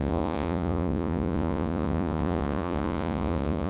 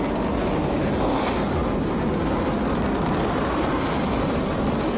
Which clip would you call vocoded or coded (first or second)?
first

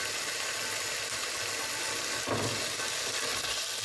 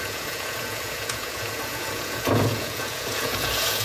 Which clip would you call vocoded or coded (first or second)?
second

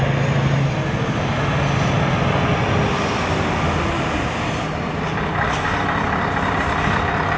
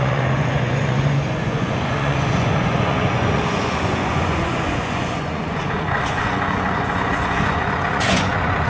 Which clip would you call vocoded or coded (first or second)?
second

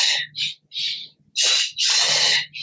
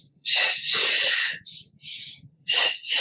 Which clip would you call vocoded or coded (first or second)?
second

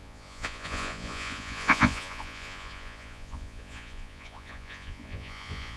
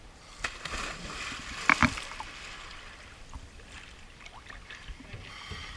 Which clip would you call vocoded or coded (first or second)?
first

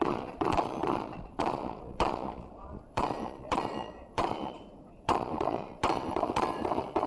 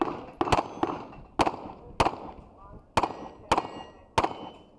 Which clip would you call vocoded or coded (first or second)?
first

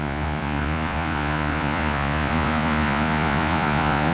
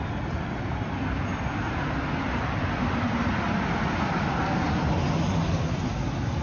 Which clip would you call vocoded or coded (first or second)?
first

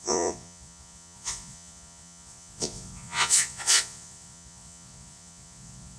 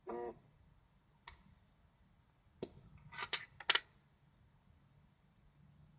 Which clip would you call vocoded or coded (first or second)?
first